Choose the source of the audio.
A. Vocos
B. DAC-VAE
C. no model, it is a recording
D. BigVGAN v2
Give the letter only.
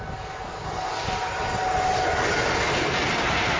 C